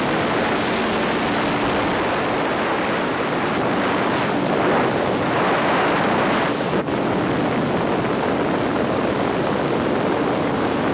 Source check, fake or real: real